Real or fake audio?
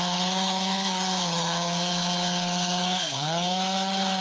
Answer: fake